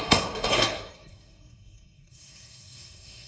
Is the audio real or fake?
fake